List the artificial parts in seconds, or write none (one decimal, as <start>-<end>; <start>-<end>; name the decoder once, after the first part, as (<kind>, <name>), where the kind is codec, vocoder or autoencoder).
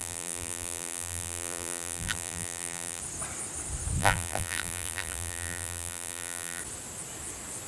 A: 0.0-3.0 (vocoder, BigVGAN v2); 4.0-6.6